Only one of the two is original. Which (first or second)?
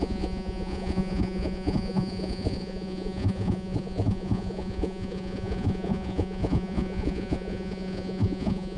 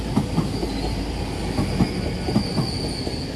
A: second